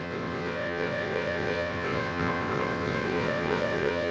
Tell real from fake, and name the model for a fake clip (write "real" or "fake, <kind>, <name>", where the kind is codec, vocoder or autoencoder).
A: fake, vocoder, WaveNeXt